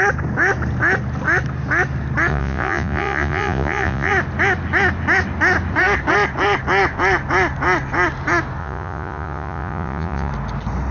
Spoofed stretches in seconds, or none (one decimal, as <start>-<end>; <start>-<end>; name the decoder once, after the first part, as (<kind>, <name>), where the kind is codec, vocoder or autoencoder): 2.3-4.1 (vocoder, Vocos); 8.6-10.3